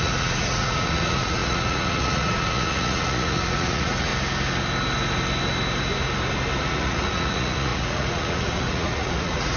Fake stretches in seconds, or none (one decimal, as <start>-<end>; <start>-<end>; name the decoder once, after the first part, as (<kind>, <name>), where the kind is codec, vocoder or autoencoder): 0.0-4.1 (vocoder, Vocos); 6.6-9.6